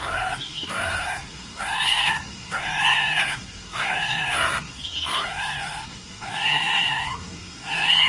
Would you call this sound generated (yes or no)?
yes